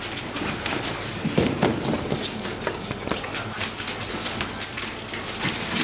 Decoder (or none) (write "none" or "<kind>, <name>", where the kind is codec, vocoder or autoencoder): none